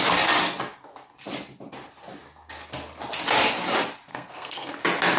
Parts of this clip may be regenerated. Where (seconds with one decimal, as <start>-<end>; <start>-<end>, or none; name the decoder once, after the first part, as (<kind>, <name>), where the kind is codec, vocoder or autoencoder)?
4.1-4.7 (codec, SNAC)